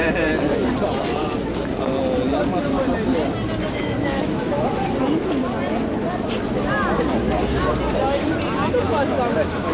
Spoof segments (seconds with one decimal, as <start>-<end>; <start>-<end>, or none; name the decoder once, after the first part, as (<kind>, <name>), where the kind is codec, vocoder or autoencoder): 3.7-5.4 (autoencoder, DAC-VAE); 8.8-9.7